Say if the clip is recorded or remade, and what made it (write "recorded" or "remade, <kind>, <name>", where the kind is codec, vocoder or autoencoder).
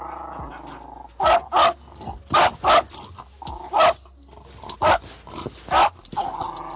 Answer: recorded